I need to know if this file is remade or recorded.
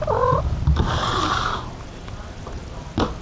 recorded